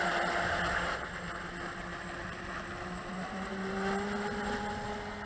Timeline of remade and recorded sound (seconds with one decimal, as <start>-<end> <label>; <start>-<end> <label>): 0.0-5.3 recorded